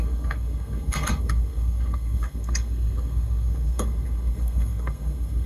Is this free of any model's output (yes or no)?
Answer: no